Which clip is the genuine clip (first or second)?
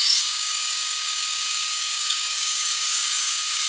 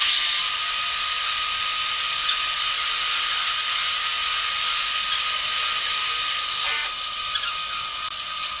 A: second